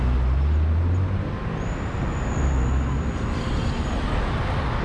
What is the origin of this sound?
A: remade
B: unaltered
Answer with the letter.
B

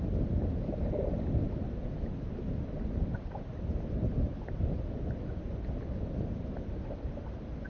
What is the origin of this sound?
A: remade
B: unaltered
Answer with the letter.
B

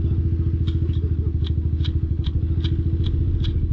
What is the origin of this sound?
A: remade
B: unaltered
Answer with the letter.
B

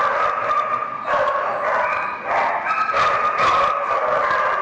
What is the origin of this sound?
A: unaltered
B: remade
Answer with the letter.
A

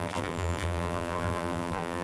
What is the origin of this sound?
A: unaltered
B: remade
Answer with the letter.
B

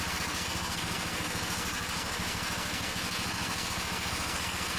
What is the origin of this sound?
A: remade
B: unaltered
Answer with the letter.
A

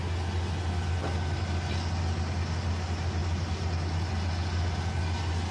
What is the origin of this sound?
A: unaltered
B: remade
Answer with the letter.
A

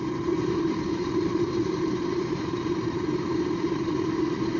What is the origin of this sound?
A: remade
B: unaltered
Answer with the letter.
A